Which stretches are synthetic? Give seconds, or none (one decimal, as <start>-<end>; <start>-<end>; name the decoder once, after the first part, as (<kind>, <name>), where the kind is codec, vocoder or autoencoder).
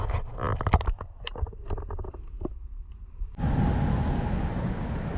0.5-3.5 (vocoder, BigVGAN v2)